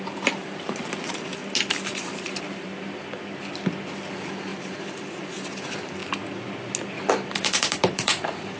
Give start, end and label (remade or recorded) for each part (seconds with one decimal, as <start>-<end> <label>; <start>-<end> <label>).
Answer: 0.0-1.4 remade; 1.4-2.0 recorded; 2.0-2.7 remade; 2.7-4.1 recorded; 4.1-6.0 remade; 6.0-7.1 recorded; 7.1-8.6 remade